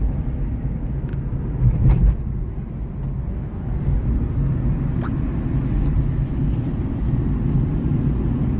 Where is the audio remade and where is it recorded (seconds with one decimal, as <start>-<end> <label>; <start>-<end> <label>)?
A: 0.0-8.6 recorded